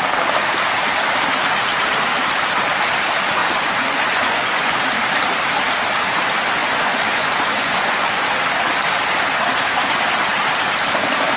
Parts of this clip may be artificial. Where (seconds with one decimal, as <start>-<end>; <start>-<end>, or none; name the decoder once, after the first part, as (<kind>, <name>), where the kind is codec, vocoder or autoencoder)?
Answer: 3.4-4.8 (vocoder, Vocos); 6.6-8.2